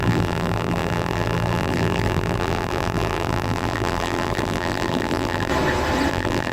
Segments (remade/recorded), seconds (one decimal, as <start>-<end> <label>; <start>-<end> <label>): 0.0-5.5 remade; 5.5-6.1 recorded; 6.1-6.5 remade